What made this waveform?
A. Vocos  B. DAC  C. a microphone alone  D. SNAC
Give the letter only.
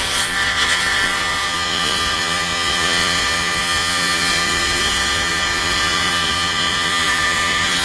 A